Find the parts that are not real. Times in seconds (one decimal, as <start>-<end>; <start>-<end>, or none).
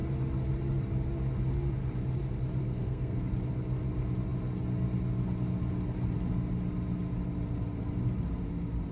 2.6-3.3